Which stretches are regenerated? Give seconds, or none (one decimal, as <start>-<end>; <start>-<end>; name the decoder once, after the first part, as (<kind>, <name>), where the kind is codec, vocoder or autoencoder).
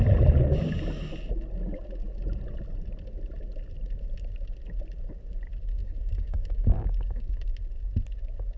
5.8-7.3 (codec, DAC)